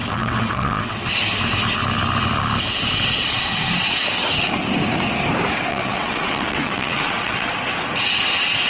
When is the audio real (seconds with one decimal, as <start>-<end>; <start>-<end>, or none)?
1.0-5.7; 7.5-8.7

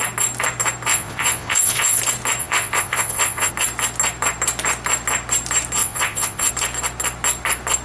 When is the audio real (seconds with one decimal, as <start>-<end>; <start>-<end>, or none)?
0.0-0.9; 2.0-2.4; 3.5-5.8; 6.5-7.8

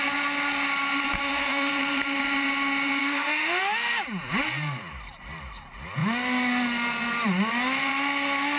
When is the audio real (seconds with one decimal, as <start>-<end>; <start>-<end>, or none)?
0.0-1.2; 1.7-3.0; 3.6-8.6

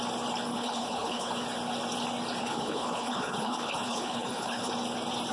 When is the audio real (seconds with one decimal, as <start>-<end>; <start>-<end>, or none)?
0.0-0.5; 1.3-2.4; 4.7-5.3

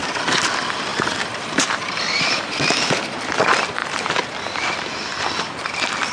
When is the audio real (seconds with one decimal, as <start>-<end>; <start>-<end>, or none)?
0.0-0.9; 3.0-6.1

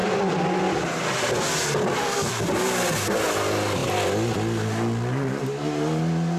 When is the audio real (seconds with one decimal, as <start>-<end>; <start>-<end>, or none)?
0.0-6.4

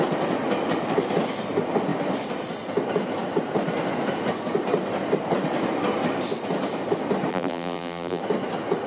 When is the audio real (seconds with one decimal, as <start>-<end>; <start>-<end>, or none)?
0.0-7.3; 8.2-8.9

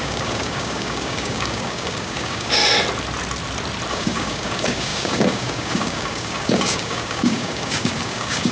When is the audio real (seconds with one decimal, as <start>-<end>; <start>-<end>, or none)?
2.6-3.9